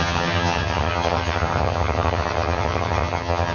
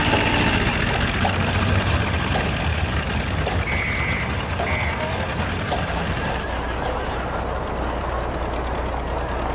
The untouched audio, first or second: second